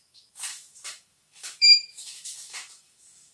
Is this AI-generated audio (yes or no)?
yes